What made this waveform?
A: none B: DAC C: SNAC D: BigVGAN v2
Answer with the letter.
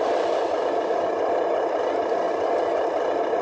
A